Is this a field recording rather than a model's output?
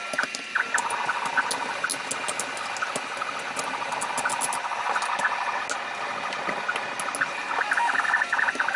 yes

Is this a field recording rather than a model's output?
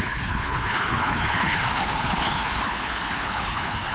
no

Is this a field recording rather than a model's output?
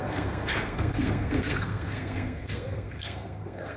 no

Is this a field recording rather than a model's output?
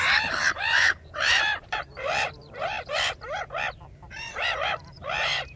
no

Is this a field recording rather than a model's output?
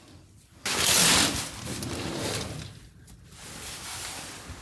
yes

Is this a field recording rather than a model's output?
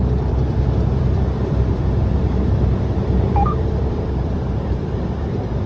no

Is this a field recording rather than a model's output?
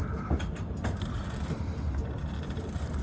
no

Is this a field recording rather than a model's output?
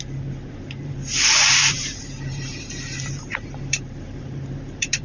no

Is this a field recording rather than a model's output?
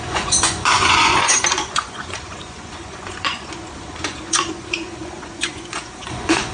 no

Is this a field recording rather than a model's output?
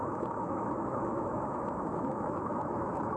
no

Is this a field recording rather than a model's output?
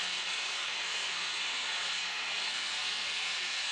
no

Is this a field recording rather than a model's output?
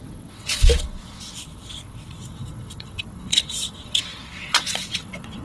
no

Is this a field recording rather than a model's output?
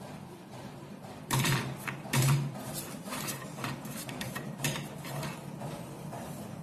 no